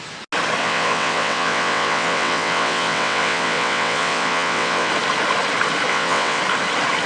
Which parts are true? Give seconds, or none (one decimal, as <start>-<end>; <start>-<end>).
0.0-0.6; 4.9-5.9; 6.4-7.1